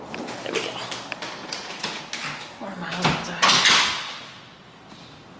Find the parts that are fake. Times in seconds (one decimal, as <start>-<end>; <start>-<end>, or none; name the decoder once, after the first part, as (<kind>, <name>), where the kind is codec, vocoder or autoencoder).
1.4-2.0 (vocoder, Vocos)